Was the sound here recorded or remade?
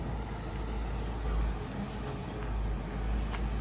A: recorded